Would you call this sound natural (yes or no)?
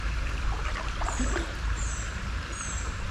no